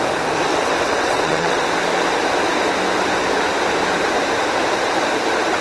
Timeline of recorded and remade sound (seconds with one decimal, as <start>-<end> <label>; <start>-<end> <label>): 0.0-0.5 recorded; 0.5-1.6 remade; 1.6-5.6 recorded

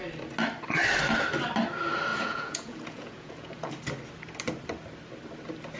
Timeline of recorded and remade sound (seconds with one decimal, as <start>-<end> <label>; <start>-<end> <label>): 0.0-2.1 recorded; 2.1-3.7 remade; 3.7-5.8 recorded